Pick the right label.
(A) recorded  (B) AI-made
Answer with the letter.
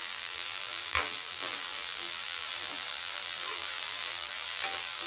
B